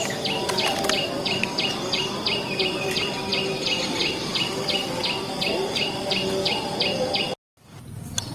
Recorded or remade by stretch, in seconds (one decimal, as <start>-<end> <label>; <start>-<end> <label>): 0.0-8.3 recorded

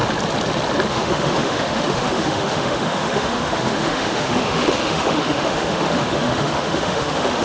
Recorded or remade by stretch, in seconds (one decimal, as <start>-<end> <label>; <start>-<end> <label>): 0.0-0.9 recorded; 0.9-7.4 remade

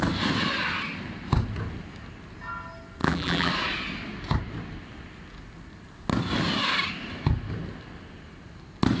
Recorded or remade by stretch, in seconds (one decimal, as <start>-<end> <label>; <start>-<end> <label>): 0.0-3.0 recorded; 3.0-3.5 remade; 3.5-9.0 recorded

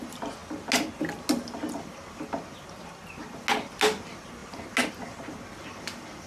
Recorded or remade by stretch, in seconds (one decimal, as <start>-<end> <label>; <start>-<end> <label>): 0.0-6.3 recorded